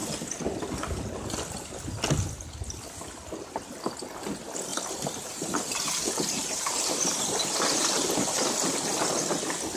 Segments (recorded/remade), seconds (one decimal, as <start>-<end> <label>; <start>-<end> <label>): 0.0-4.7 recorded; 4.7-8.5 remade; 8.5-9.8 recorded